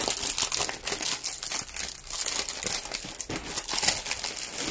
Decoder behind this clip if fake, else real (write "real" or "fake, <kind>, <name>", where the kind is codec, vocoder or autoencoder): real